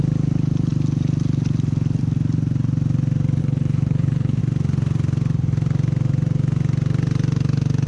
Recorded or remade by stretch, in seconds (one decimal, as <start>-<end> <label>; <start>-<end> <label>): 0.0-3.4 recorded; 3.4-4.4 remade; 4.4-7.9 recorded